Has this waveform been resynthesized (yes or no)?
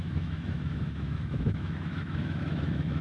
yes